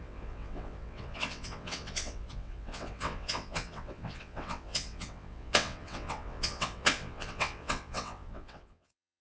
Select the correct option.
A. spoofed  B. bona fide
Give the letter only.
A